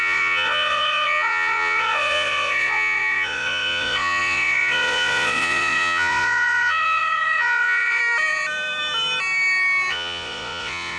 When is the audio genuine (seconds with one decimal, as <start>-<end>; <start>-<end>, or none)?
8.0-9.9